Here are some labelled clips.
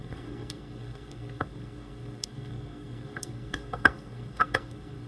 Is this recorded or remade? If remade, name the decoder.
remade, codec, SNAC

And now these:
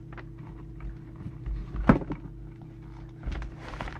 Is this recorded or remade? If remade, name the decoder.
recorded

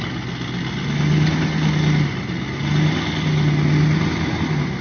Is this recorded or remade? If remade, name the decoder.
recorded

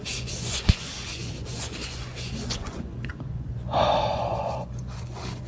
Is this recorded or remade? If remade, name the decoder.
remade, vocoder, Vocos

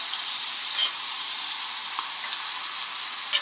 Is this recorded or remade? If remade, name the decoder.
recorded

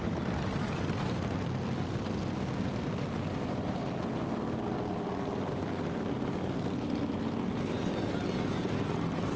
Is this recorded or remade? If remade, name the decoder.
recorded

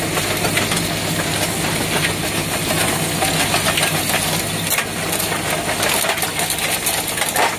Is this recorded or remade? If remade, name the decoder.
recorded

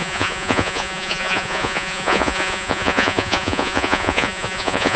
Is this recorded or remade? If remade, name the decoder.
remade, vocoder, Vocos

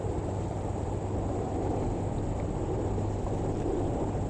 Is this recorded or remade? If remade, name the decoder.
recorded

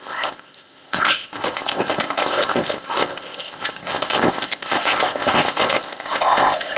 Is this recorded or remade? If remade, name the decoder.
remade, codec, ZipCodec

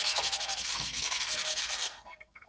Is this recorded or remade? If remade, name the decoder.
remade, codec, SNAC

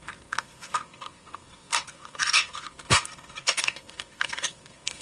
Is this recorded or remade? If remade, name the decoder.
remade, codec, SNAC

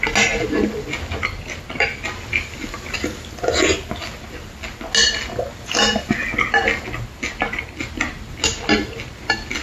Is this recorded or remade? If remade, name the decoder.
recorded